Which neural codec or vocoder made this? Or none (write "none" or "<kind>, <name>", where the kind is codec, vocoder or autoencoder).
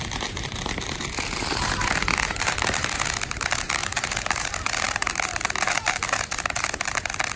vocoder, BigVGAN v2